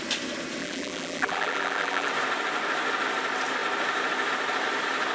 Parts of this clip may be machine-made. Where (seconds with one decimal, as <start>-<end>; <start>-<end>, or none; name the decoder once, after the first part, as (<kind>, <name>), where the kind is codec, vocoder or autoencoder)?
0.6-2.1 (vocoder, BigVGAN v2)